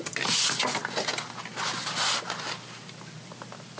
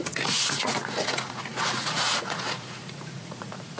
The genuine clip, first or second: first